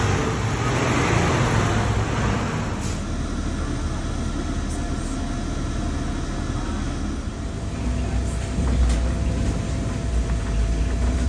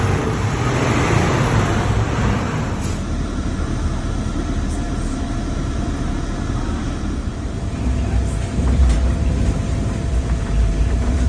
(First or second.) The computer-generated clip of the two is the second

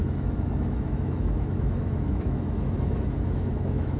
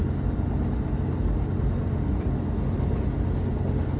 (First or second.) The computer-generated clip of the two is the first